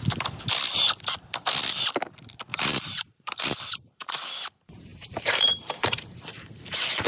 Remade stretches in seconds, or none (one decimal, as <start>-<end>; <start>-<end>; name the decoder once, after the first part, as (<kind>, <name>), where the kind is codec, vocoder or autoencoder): 2.5-4.1 (vocoder, BigVGAN v2); 4.9-7.1